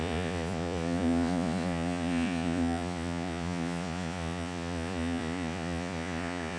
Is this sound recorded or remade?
remade